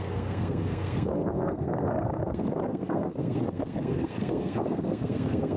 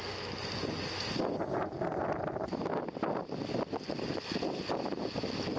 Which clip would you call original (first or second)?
second